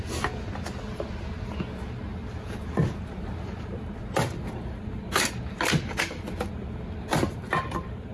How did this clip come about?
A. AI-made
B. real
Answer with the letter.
B